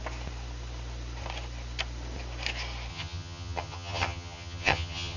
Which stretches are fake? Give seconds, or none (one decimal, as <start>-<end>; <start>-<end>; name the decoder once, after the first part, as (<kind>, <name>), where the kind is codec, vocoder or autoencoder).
2.9-5.2 (vocoder, HiFi-GAN)